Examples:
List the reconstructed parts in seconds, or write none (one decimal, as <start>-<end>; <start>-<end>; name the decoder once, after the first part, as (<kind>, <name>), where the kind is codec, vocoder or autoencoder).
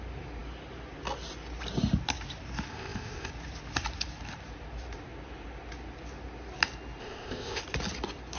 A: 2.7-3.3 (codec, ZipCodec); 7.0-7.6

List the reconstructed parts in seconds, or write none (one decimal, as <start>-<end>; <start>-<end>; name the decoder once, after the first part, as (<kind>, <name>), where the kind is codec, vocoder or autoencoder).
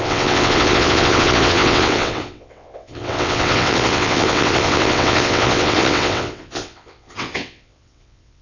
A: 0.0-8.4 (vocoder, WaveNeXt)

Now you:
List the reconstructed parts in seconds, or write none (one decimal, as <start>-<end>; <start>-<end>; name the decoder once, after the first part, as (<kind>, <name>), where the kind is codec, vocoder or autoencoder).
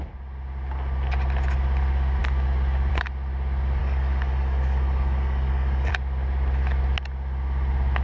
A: 3.8-5.9 (codec, DAC)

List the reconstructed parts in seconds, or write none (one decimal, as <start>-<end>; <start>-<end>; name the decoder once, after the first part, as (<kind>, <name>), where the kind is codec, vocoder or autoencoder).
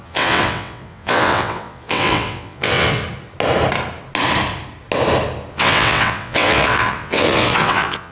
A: 0.0-3.0 (vocoder, WaveNeXt); 5.5-8.1